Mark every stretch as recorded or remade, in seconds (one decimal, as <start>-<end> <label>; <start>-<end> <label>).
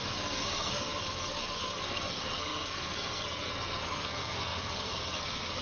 0.0-5.6 remade